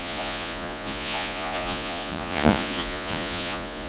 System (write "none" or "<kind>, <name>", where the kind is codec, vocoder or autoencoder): vocoder, Vocos